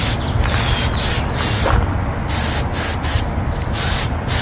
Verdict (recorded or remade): recorded